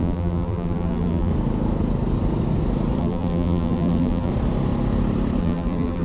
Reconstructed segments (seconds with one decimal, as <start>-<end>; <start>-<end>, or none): 0.0-1.3; 3.0-4.3; 5.4-6.0